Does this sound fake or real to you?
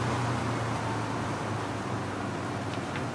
real